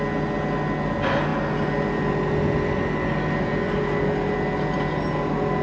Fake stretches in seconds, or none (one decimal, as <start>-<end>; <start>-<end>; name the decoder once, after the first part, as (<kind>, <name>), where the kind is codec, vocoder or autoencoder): none